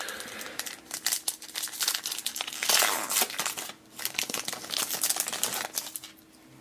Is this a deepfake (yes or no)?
no